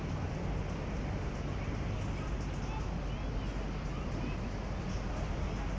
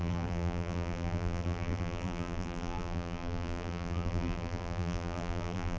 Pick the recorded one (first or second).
first